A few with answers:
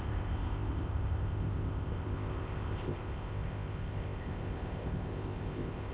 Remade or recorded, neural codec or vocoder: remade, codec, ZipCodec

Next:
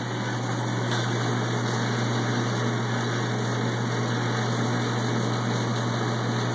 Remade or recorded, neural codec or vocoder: recorded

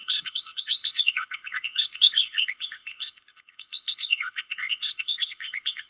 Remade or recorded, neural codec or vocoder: remade, codec, ZipCodec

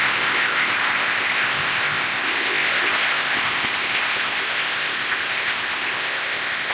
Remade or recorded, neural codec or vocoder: remade, codec, ZipCodec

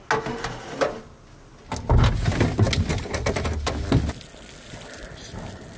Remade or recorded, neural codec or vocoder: recorded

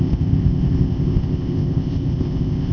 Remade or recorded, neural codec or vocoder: remade, codec, ZipCodec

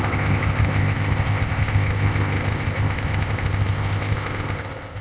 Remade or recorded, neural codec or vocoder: remade, codec, ZipCodec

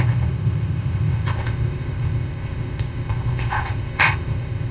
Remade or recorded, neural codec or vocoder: remade, codec, ZipCodec